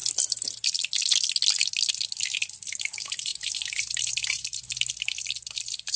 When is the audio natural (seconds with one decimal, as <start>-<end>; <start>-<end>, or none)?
0.0-2.7